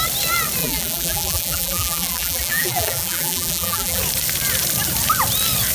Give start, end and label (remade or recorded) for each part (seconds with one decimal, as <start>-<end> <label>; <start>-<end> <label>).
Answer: 0.0-0.6 recorded; 0.6-4.0 remade; 4.0-5.7 recorded